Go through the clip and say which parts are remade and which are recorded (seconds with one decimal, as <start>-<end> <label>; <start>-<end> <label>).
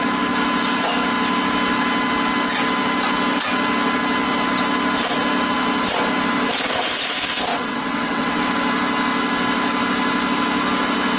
0.0-7.5 recorded; 7.5-8.4 remade; 8.4-11.2 recorded